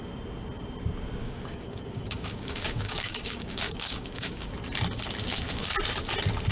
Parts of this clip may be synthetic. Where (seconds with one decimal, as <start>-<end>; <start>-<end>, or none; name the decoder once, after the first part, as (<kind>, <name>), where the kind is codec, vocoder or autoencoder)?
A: 1.2-4.5 (codec, DAC); 5.2-5.7